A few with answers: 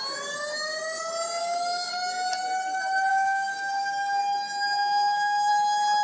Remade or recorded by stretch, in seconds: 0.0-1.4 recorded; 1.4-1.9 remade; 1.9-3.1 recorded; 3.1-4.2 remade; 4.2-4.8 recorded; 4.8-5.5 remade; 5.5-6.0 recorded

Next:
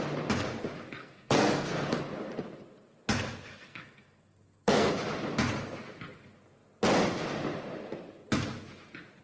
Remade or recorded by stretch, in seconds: 0.0-1.0 recorded; 1.0-2.0 remade; 2.0-3.5 recorded; 3.5-4.9 remade; 4.9-9.2 recorded

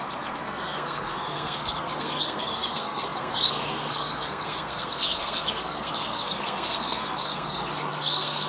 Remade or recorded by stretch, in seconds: 0.0-8.5 remade